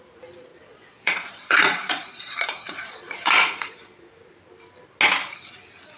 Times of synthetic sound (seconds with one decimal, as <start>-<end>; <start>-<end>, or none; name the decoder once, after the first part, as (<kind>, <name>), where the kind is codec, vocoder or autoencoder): 0.5-4.1 (vocoder, Vocos)